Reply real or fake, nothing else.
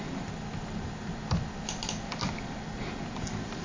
fake